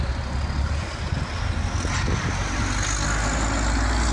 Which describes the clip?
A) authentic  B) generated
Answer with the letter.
A